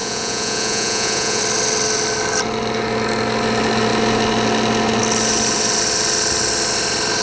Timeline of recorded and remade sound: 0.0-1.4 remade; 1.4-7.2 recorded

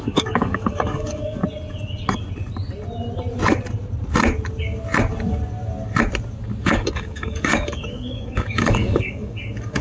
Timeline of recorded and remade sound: 0.0-1.4 remade; 1.4-6.6 recorded; 6.6-9.8 remade

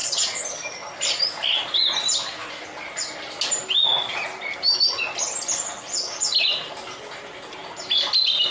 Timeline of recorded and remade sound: 0.0-8.5 recorded

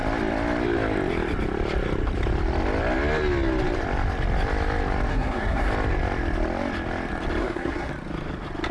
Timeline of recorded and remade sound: 0.0-5.1 recorded; 5.1-5.7 remade; 5.7-7.4 recorded; 7.4-7.9 remade; 7.9-8.7 recorded

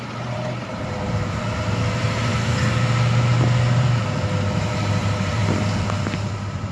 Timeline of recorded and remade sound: 0.0-2.3 remade; 2.3-3.8 recorded; 3.8-5.4 remade; 5.4-6.7 recorded

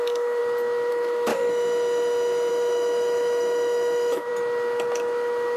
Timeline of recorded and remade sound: 0.0-0.4 remade; 0.4-0.9 recorded; 0.9-1.3 remade; 1.3-2.5 recorded; 2.5-4.3 remade; 4.3-5.6 recorded